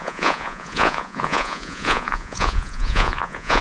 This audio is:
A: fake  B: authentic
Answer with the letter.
A